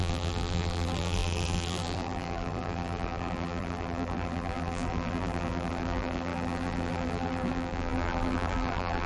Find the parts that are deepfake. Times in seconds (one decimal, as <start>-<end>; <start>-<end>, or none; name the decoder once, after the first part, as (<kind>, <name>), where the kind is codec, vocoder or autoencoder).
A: 0.0-9.1 (vocoder, BigVGAN v2)